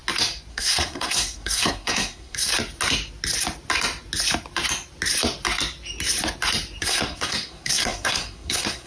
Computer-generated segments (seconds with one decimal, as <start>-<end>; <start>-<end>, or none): 0.5-2.5; 6.8-8.9